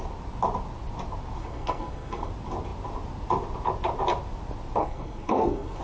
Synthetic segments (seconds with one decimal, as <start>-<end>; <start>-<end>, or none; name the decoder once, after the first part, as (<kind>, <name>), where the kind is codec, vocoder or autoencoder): 1.4-2.3 (codec, SNAC); 4.8-5.8

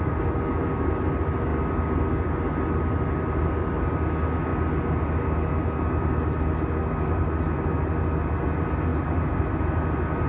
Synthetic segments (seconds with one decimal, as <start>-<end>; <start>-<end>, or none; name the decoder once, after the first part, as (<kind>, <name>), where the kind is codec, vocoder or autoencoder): 8.9-9.4 (vocoder, BigVGAN v2)

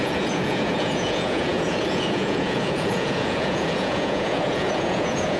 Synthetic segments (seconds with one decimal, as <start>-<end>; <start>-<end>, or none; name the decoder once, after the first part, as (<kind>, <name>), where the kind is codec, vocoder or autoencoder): 0.0-5.4 (vocoder, Vocos)

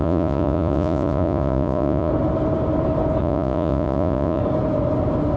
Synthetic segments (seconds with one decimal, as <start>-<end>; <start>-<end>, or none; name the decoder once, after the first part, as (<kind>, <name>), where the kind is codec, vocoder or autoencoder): 0.0-2.1 (vocoder, Vocos); 3.2-4.4

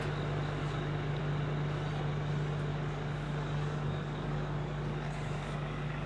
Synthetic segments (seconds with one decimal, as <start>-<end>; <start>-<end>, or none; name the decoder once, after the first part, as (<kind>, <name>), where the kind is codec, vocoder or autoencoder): 0.6-1.2 (codec, DAC); 2.7-6.1

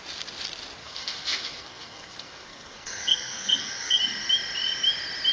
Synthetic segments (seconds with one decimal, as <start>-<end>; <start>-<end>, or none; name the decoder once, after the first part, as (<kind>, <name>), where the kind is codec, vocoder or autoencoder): 0.8-4.0 (codec, SNAC)

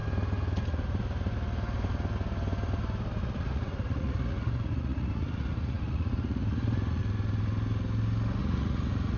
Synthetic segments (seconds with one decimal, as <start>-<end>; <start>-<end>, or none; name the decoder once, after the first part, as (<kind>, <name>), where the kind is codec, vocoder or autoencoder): 3.2-7.0 (vocoder, Vocos); 8.4-9.2

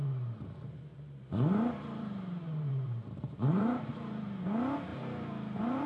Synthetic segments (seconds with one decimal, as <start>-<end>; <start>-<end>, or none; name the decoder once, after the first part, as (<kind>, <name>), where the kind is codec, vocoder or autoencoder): 0.9-4.4 (vocoder, BigVGAN v2); 4.9-5.9